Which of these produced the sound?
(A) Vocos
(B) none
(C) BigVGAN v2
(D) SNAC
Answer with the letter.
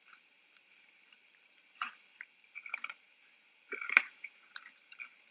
C